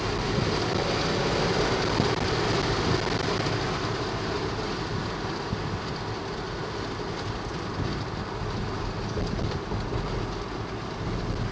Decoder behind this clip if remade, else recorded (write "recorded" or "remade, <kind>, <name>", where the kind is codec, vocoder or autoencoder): recorded